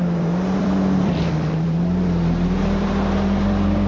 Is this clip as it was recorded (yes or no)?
no